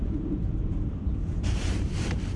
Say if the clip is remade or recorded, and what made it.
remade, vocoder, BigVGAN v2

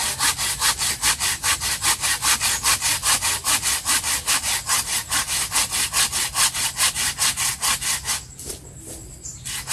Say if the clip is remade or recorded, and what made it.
recorded